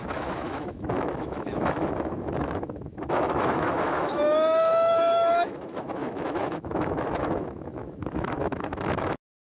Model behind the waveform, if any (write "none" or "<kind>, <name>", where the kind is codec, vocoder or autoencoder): autoencoder, DAC-VAE